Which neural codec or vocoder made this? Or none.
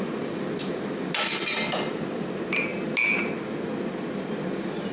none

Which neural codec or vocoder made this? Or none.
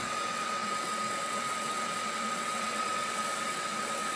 vocoder, WaveNeXt